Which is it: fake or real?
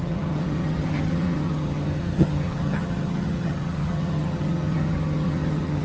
fake